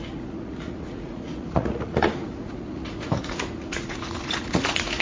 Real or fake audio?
fake